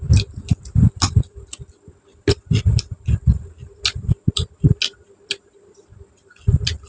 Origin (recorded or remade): recorded